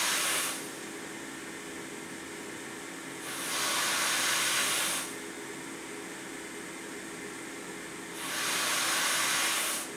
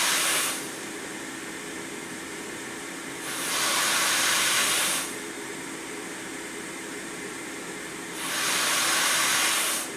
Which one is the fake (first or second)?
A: second